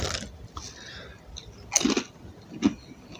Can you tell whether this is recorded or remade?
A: recorded